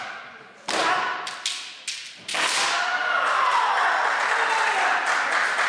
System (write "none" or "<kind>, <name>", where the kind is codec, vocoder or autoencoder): none